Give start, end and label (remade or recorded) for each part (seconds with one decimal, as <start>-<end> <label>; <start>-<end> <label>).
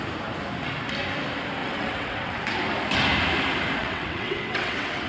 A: 0.0-1.6 recorded; 1.6-2.4 remade; 2.4-3.8 recorded; 3.8-5.1 remade